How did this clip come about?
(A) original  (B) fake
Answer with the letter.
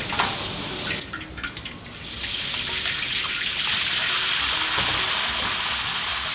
A